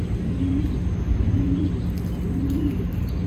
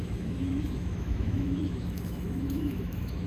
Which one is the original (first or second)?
first